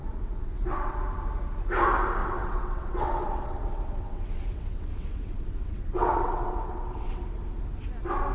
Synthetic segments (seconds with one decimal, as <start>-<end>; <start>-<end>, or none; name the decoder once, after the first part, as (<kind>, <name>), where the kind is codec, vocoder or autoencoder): 0.0-1.0 (vocoder, WaveNeXt); 2.2-7.2